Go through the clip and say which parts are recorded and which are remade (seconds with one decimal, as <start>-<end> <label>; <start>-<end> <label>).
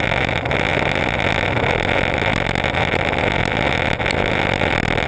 0.0-5.1 recorded